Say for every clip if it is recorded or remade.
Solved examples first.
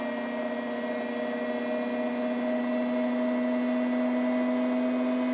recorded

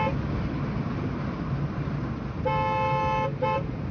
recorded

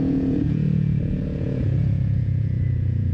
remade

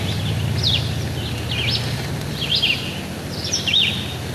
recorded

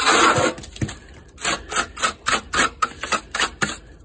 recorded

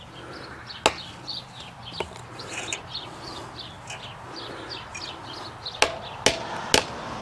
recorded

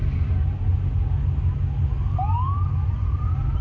recorded